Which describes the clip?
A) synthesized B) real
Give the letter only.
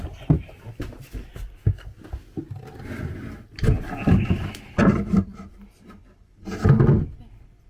B